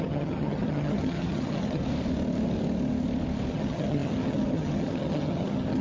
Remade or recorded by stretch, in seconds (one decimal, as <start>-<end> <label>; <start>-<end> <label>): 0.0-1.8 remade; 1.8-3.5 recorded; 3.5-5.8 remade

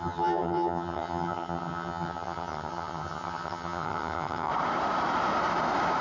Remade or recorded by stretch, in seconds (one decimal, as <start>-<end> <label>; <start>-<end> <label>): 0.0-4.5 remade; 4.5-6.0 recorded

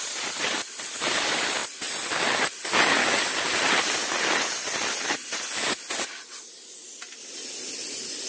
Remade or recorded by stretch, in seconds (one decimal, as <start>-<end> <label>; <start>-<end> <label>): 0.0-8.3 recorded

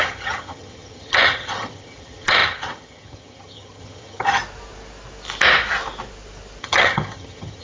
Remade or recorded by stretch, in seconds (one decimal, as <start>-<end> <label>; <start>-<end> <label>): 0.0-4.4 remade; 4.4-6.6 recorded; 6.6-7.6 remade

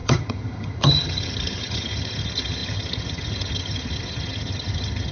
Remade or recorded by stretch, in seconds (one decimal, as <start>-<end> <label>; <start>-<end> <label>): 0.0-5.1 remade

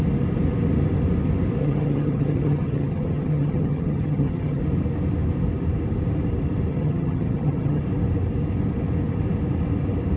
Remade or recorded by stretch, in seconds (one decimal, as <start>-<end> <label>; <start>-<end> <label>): 0.0-1.6 recorded; 1.6-4.6 remade; 4.6-6.7 recorded; 6.7-7.8 remade; 7.8-10.2 recorded

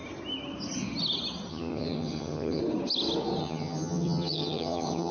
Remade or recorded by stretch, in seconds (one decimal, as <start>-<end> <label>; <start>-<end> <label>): 0.0-1.5 recorded; 1.5-2.6 remade; 2.6-3.4 recorded; 3.4-5.1 remade